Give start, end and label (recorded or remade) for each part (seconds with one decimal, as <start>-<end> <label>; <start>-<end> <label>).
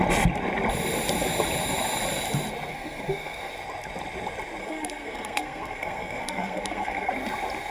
0.0-2.7 recorded; 2.7-3.5 remade; 3.5-4.6 recorded; 4.6-7.1 remade; 7.1-7.7 recorded